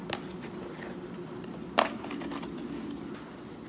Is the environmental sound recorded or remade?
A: recorded